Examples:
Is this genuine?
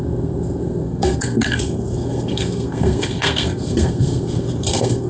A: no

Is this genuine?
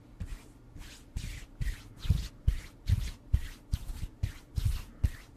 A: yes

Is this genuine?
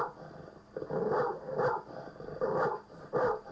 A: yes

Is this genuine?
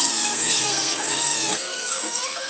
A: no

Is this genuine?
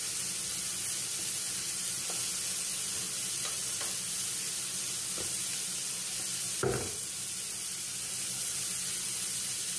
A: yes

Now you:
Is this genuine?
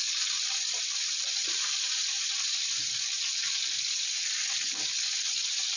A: yes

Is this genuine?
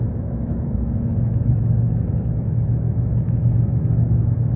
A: no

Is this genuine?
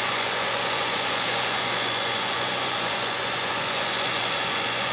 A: no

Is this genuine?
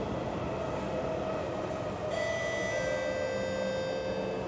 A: yes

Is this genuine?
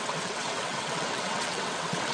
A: no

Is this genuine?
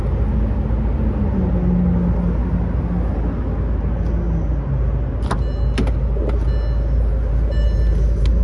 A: yes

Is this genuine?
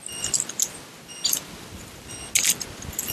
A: yes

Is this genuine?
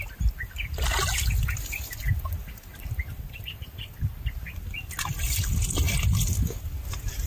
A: yes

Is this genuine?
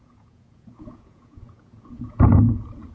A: no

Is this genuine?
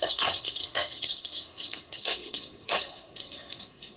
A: no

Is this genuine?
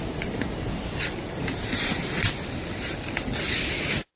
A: yes